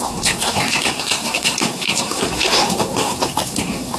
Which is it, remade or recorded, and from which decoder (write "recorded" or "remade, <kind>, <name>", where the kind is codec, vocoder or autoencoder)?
remade, codec, SNAC